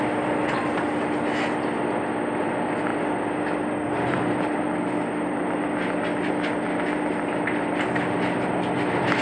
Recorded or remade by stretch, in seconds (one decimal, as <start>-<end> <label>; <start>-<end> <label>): 0.0-9.2 recorded

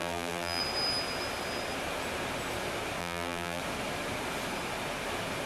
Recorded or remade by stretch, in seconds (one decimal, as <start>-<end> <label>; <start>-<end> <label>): 0.0-0.6 remade; 0.6-3.0 recorded; 3.0-3.6 remade; 3.6-5.5 recorded

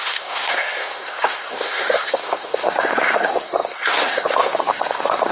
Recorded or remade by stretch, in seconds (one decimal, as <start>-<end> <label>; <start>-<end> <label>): 0.0-5.3 remade

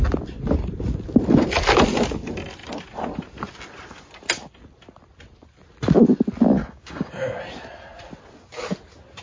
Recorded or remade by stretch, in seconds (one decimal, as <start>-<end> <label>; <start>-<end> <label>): 0.0-6.6 recorded; 6.6-7.4 remade; 7.4-9.2 recorded

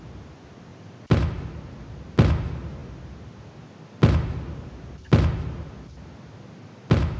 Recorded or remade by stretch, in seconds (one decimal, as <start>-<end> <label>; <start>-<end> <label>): 0.0-0.7 recorded; 0.7-1.5 remade; 1.5-7.2 recorded

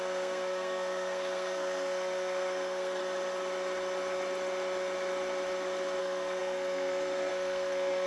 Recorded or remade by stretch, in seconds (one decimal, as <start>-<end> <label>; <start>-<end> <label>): 0.0-3.0 remade; 3.0-6.0 recorded; 6.0-8.1 remade